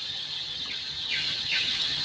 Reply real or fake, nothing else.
fake